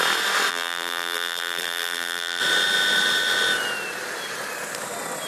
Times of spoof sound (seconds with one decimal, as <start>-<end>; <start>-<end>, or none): 0.5-2.4